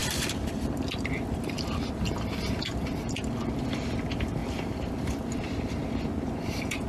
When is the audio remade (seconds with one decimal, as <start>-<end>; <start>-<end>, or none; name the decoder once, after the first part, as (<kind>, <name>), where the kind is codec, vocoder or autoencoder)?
0.0-3.9 (vocoder, BigVGAN v2); 4.4-6.0